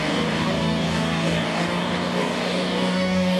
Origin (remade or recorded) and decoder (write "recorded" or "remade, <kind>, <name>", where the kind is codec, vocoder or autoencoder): remade, codec, DAC